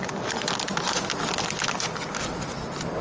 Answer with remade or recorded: recorded